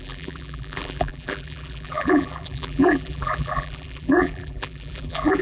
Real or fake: fake